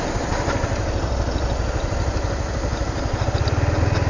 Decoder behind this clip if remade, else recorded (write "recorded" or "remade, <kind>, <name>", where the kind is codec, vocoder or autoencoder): recorded